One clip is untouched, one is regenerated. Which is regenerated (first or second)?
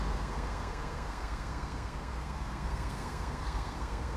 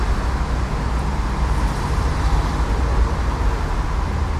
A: first